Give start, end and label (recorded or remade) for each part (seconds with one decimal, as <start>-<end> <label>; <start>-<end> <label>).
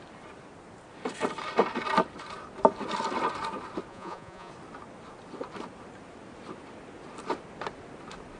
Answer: 0.0-3.9 recorded; 3.9-4.5 remade; 4.5-8.4 recorded